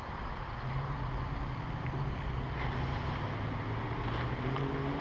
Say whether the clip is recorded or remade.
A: recorded